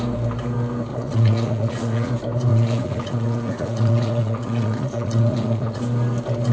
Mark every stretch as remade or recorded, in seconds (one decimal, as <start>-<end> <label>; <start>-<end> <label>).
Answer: 0.0-0.9 recorded; 0.9-2.1 remade; 2.1-2.5 recorded; 2.5-5.8 remade; 5.8-6.5 recorded